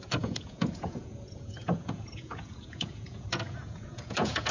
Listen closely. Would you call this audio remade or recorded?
remade